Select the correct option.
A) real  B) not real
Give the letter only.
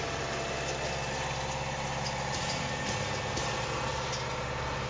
A